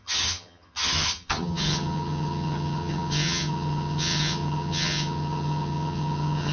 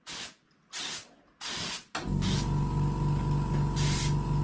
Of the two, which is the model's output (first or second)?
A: first